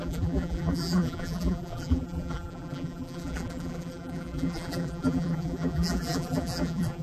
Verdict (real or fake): fake